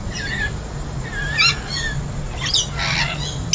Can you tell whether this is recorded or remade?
recorded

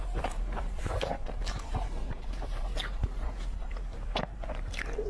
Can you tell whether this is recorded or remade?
remade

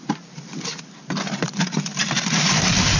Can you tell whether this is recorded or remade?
recorded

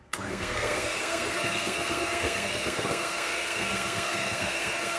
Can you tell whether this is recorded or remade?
remade